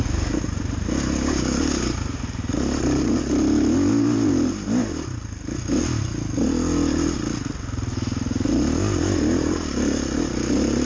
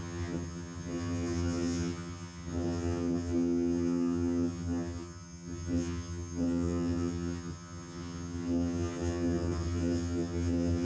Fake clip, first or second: second